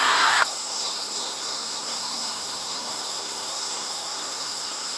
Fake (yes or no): yes